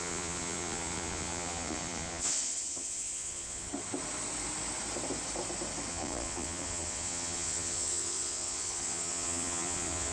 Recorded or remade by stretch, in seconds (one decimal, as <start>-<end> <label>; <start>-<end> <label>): 0.0-3.7 remade; 3.7-5.9 recorded; 5.9-10.1 remade